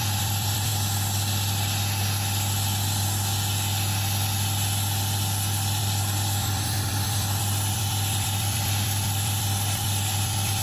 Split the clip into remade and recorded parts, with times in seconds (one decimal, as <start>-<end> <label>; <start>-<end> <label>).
0.0-0.7 remade; 0.7-5.8 recorded; 5.8-10.6 remade